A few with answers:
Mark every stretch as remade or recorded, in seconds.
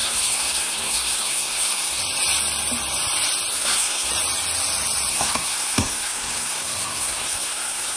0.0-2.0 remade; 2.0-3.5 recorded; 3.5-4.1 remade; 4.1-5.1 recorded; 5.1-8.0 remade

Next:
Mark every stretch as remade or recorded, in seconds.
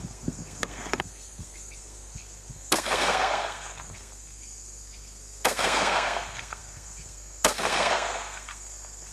0.0-9.1 remade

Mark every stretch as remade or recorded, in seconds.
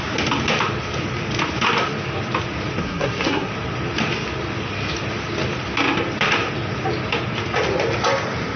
0.0-2.8 recorded; 2.8-3.5 remade; 3.5-8.6 recorded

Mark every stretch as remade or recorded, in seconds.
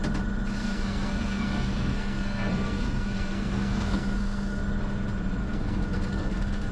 0.0-0.6 recorded; 0.6-4.6 remade; 4.6-5.4 recorded; 5.4-6.7 remade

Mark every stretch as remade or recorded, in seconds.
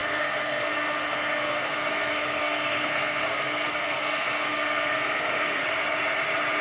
0.0-5.6 remade; 5.6-6.6 recorded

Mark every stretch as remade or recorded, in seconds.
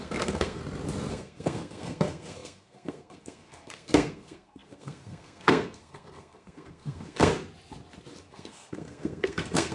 0.0-0.6 remade; 0.6-1.1 recorded; 1.1-7.3 remade; 7.3-8.3 recorded; 8.3-9.7 remade